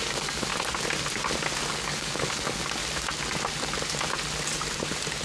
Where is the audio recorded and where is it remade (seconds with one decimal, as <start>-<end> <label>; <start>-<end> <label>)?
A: 0.0-0.5 remade; 0.5-1.7 recorded; 1.7-2.8 remade; 2.8-5.2 recorded